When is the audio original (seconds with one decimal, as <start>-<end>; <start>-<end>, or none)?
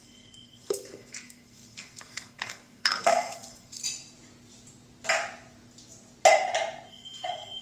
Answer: 3.8-6.9